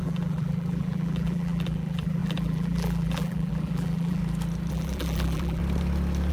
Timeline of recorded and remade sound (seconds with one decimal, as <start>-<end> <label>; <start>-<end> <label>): 0.0-4.2 remade; 4.2-4.7 recorded; 4.7-5.6 remade; 5.6-6.3 recorded